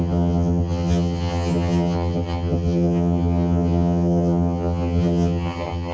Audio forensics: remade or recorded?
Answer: remade